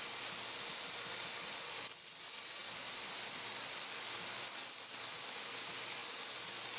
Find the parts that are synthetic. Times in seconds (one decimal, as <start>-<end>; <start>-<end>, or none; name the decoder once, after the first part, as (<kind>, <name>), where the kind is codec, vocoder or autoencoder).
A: none